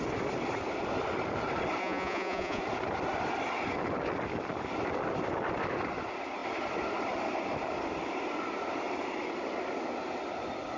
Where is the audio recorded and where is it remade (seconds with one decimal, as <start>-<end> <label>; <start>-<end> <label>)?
0.0-1.8 recorded; 1.8-2.6 remade; 2.6-10.8 recorded